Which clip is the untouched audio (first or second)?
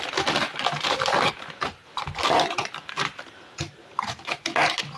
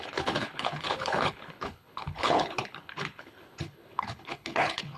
first